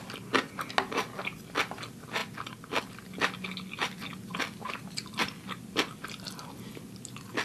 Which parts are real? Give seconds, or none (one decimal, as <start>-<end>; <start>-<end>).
0.0-7.4